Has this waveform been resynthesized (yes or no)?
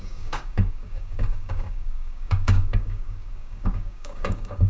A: yes